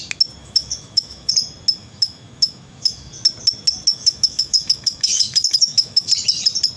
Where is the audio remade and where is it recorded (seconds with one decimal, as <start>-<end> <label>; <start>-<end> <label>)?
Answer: 0.0-0.4 recorded; 0.4-1.3 remade; 1.3-1.8 recorded; 1.8-3.1 remade; 3.1-3.9 recorded; 3.9-6.1 remade; 6.1-6.8 recorded